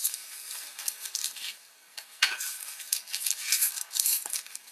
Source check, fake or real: fake